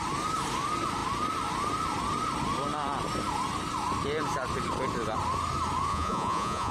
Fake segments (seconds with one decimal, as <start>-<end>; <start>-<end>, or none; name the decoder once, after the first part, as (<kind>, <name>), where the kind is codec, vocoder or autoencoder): 5.9-6.7 (vocoder, Vocos)